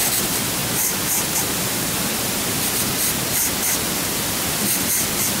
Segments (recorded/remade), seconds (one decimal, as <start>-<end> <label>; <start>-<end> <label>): 0.0-0.6 remade; 0.6-1.4 recorded; 1.4-2.8 remade; 2.8-3.8 recorded; 3.8-5.4 remade